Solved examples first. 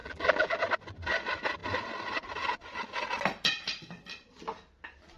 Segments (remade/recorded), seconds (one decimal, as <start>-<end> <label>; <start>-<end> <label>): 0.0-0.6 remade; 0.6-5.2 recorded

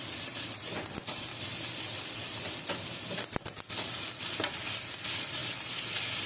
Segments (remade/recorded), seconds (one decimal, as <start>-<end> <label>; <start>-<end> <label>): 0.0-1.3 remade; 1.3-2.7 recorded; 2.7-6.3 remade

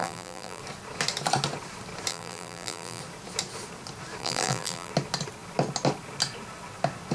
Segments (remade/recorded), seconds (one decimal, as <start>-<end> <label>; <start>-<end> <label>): 0.0-0.6 remade; 0.6-2.1 recorded; 2.1-3.0 remade; 3.0-4.2 recorded; 4.2-4.9 remade; 4.9-7.1 recorded

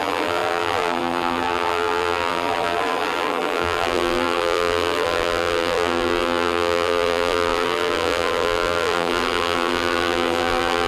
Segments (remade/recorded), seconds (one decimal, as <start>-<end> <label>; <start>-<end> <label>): 0.0-10.9 remade